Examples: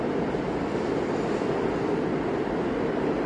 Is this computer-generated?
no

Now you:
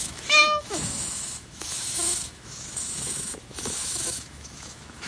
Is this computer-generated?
yes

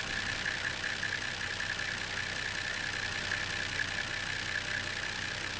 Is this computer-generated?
no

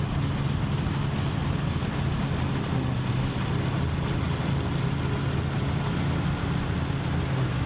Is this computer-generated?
no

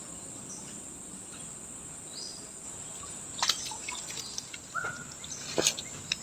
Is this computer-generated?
no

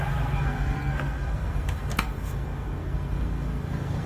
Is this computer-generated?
yes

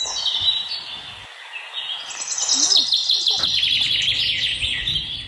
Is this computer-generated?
no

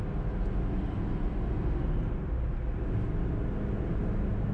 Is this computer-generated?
no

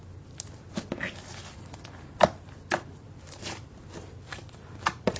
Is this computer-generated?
no